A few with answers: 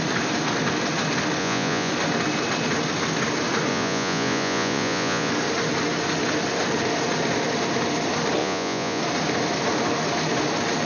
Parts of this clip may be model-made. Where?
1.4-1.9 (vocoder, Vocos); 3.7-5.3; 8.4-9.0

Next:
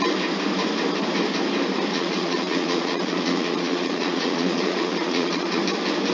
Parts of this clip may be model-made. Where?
1.9-5.6 (vocoder, Vocos)

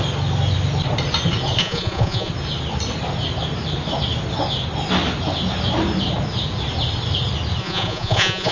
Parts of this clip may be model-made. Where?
1.6-2.3 (vocoder, Vocos); 7.6-8.5

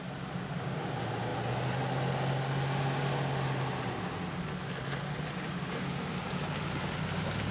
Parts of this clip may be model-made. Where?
none

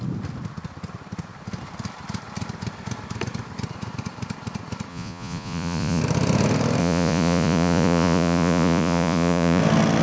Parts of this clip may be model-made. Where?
4.9-6.0 (vocoder, Vocos); 6.8-9.6

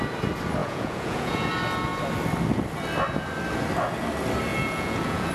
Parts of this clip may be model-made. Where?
0.6-1.5 (vocoder, Vocos); 4.5-5.3

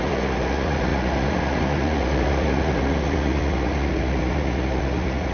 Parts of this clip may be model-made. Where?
0.0-5.3 (vocoder, Vocos)